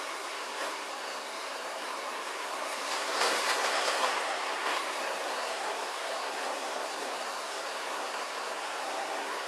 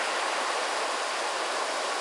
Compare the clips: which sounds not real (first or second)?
first